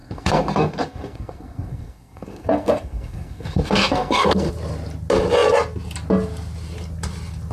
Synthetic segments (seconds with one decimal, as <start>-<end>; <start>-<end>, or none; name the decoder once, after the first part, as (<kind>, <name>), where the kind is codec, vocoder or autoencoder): 0.0-4.5 (codec, SNAC)